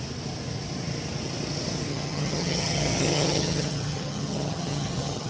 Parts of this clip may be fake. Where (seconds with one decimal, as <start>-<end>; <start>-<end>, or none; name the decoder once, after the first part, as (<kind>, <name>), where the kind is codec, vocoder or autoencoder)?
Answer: 1.9-5.3 (vocoder, HiFi-GAN)